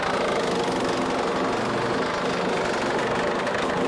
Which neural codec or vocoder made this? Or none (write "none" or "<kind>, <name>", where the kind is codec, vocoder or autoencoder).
none